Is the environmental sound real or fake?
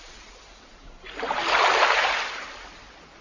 real